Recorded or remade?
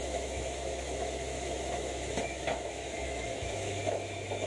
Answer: remade